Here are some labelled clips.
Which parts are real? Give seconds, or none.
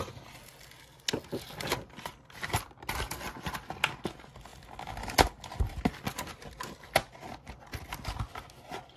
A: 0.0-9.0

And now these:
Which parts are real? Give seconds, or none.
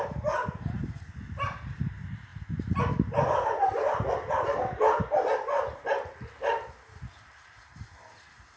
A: 0.0-8.6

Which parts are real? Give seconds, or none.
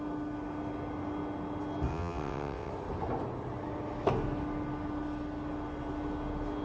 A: 0.0-1.9; 2.7-6.6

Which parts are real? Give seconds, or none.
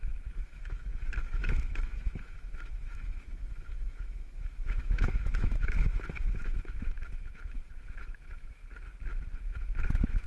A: 8.6-9.4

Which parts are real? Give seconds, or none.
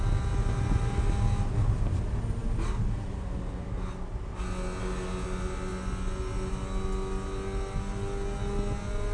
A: 0.0-9.1